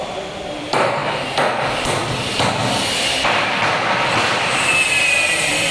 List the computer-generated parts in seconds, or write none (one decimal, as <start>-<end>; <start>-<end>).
0.0-1.0; 4.4-5.7